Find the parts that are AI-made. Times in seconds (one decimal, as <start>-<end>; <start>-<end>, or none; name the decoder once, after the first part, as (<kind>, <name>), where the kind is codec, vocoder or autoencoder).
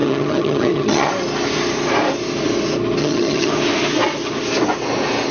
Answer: 0.0-1.1 (vocoder, HiFi-GAN); 3.0-3.5